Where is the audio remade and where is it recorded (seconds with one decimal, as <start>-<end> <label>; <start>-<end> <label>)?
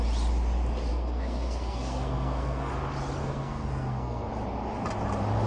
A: 0.0-0.9 recorded; 0.9-2.7 remade; 2.7-3.2 recorded; 3.2-4.3 remade; 4.3-5.5 recorded